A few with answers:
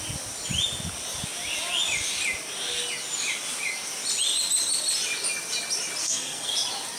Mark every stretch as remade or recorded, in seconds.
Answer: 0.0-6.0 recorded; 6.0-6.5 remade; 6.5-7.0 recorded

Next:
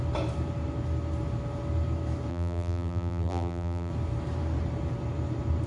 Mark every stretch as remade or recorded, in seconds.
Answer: 0.0-2.3 recorded; 2.3-3.9 remade; 3.9-5.7 recorded

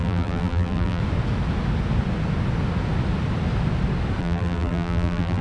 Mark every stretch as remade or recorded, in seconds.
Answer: 0.0-1.0 remade; 1.0-4.2 recorded; 4.2-5.4 remade

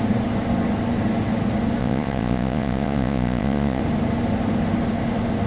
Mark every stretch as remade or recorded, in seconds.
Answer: 0.0-1.8 recorded; 1.8-3.8 remade; 3.8-5.5 recorded